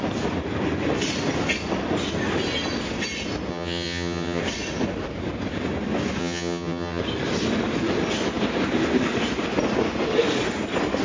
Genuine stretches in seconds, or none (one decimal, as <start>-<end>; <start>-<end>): 0.0-3.5; 4.4-6.2; 7.0-11.0